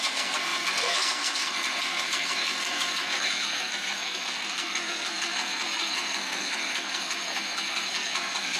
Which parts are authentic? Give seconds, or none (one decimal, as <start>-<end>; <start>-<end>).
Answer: none